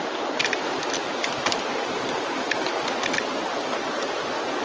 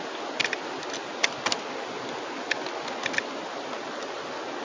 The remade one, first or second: first